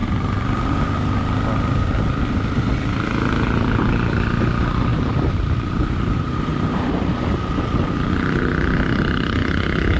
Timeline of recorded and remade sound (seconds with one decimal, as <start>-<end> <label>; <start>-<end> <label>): 0.0-4.9 recorded; 4.9-6.9 remade; 6.9-10.0 recorded